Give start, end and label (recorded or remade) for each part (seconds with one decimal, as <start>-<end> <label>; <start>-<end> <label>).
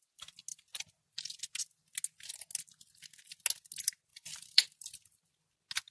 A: 0.0-0.5 recorded; 0.5-1.2 remade; 1.2-4.1 recorded; 4.1-5.3 remade; 5.3-5.9 recorded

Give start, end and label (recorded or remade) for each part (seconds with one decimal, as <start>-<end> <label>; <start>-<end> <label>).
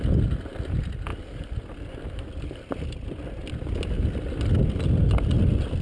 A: 0.0-5.8 recorded